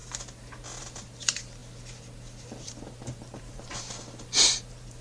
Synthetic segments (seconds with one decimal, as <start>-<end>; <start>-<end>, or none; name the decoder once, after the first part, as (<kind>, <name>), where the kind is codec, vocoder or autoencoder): 0.8-1.6 (vocoder, BigVGAN v2); 2.6-5.0